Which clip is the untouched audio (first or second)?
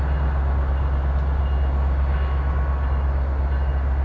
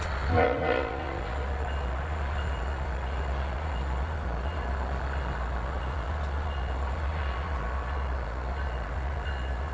first